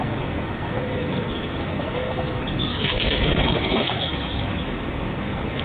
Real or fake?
fake